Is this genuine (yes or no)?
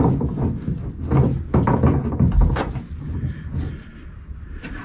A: yes